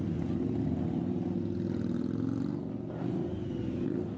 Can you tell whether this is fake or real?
real